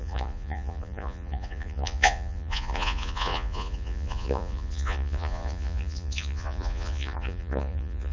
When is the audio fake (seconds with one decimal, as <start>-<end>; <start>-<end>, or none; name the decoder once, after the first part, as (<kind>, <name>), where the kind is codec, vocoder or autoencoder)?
0.0-8.1 (vocoder, Vocos)